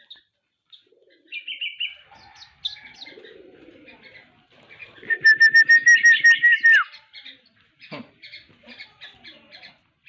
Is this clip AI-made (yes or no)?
no